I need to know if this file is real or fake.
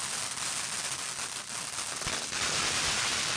real